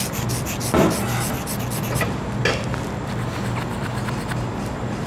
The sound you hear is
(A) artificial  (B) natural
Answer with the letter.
B